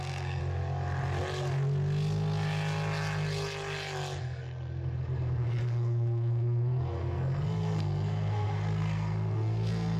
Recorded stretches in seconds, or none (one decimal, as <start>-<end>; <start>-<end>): 0.4-4.2